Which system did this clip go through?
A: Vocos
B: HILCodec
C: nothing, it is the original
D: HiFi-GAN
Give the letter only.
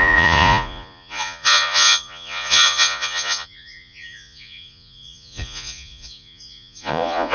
A